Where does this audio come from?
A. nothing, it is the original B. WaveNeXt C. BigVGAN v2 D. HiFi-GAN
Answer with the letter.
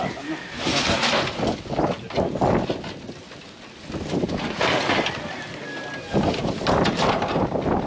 A